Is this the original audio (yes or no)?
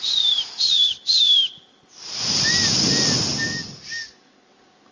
yes